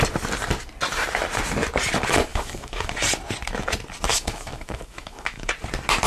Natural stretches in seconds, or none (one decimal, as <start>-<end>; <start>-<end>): 0.0-2.3; 2.9-4.1; 5.5-6.1